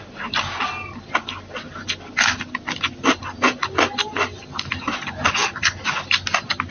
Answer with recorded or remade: recorded